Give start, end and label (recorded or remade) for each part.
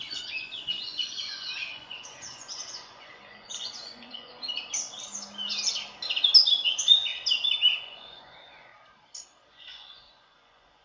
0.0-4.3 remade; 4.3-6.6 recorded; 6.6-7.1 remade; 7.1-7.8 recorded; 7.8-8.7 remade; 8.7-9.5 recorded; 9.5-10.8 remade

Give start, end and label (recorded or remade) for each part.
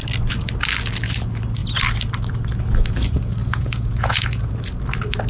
0.0-3.4 recorded; 3.4-4.5 remade; 4.5-5.3 recorded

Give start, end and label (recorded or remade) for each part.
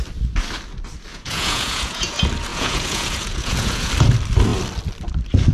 0.0-1.1 recorded; 1.1-2.1 remade; 2.1-2.5 recorded; 2.5-3.9 remade; 3.9-5.5 recorded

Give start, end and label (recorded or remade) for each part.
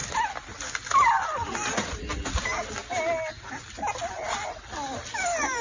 0.0-5.6 recorded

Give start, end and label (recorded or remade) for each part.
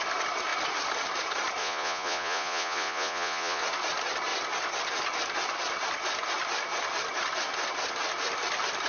0.0-1.6 recorded; 1.6-3.6 remade; 3.6-8.9 recorded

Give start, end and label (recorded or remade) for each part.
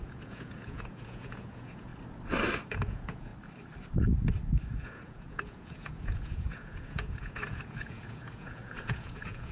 0.0-1.9 remade; 1.9-2.7 recorded; 2.7-3.3 remade; 3.3-4.8 recorded; 4.8-9.5 remade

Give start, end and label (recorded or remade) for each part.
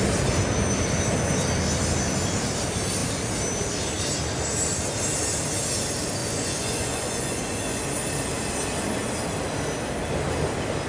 0.0-6.2 recorded; 6.2-7.8 remade; 7.8-10.9 recorded